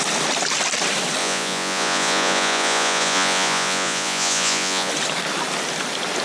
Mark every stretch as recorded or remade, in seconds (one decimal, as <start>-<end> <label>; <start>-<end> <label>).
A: 0.0-1.2 recorded; 1.2-4.9 remade; 4.9-6.2 recorded